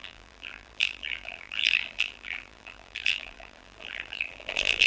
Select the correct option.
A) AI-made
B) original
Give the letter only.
A